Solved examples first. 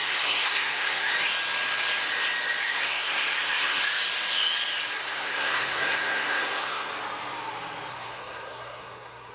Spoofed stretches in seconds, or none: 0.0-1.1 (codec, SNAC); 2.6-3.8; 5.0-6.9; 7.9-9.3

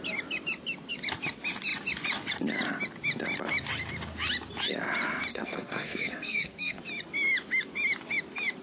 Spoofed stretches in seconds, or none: 5.3-6.8 (codec, SNAC)

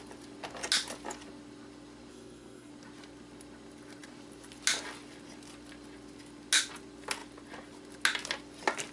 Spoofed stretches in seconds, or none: 2.1-2.7 (codec, SNAC)

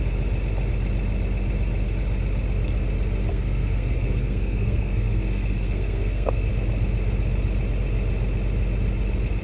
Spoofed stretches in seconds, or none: 3.3-6.5 (codec, SNAC)

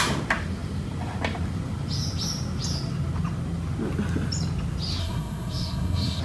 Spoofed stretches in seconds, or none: 5.0-6.2 (codec, SNAC)

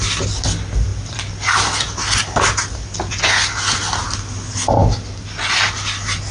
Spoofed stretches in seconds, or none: none

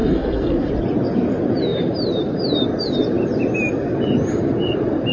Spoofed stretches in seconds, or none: 0.0-0.7 (codec, SNAC)